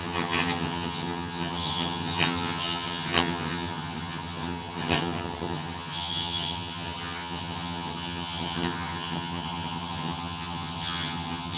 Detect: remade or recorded remade